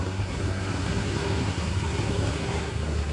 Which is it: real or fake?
fake